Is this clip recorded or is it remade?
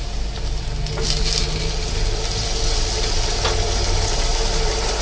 recorded